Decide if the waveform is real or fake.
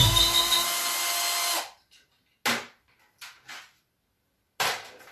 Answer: real